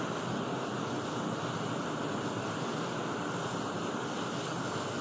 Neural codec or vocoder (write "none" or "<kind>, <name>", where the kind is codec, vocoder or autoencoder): none